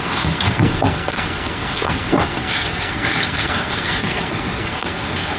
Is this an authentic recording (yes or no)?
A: no